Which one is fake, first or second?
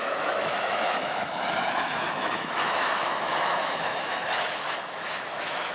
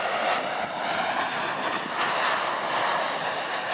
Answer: first